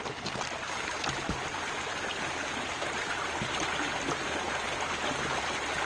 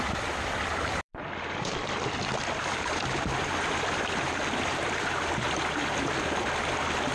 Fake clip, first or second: second